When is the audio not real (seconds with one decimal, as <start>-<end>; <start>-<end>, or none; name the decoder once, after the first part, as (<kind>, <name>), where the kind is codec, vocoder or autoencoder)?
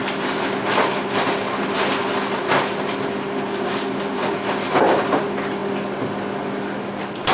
none